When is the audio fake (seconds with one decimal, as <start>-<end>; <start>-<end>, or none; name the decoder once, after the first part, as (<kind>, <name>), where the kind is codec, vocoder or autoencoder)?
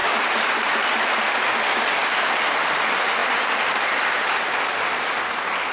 0.0-0.7 (vocoder, BigVGAN v2); 2.0-2.6